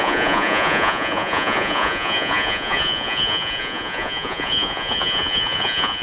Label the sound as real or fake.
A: fake